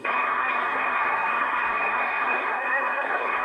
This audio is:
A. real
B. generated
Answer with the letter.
B